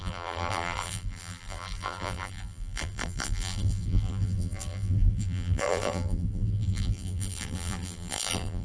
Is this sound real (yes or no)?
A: no